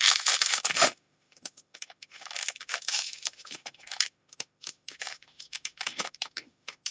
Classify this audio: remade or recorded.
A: remade